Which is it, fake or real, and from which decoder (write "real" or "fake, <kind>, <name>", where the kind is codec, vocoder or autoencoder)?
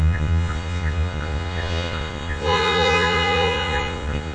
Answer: fake, vocoder, Vocos